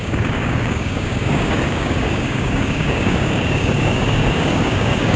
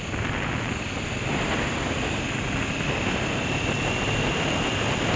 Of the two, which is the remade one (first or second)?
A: first